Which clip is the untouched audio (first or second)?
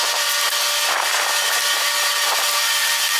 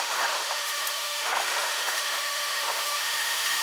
first